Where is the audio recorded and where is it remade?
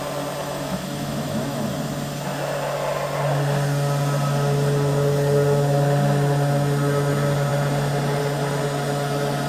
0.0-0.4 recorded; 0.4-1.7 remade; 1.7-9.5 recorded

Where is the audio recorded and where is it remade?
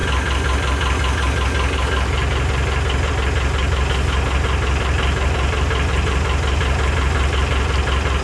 0.0-8.2 recorded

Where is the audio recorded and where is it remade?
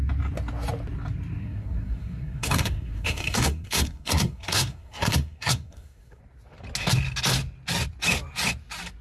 0.0-1.4 recorded; 1.4-6.2 remade; 6.2-9.0 recorded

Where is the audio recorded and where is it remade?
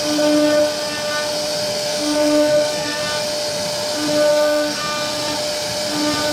0.0-1.7 recorded; 1.7-3.0 remade; 3.0-4.3 recorded; 4.3-4.8 remade; 4.8-6.3 recorded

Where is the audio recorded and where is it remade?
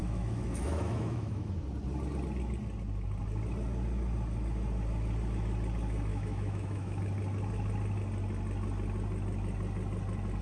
0.0-1.5 remade; 1.5-6.1 recorded; 6.1-7.0 remade; 7.0-10.4 recorded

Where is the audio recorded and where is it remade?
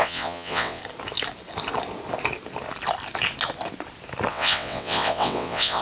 0.0-0.8 remade; 0.8-4.3 recorded; 4.3-5.8 remade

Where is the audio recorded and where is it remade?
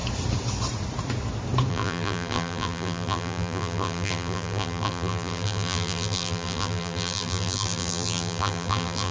0.0-1.7 recorded; 1.7-9.1 remade